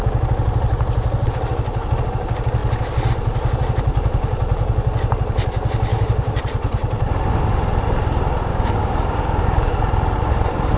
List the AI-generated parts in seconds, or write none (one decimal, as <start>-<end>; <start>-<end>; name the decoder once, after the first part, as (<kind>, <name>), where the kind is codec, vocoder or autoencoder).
5.9-6.4 (codec, DAC); 8.5-9.7